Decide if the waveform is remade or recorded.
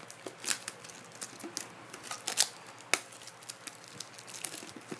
recorded